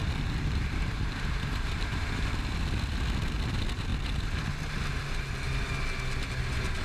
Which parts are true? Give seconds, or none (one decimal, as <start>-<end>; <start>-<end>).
2.3-6.8